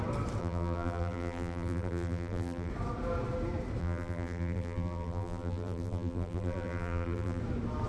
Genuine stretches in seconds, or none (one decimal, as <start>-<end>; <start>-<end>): 0.0-0.4; 2.7-3.8; 7.4-7.9